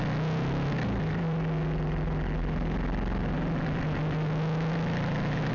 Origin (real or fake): real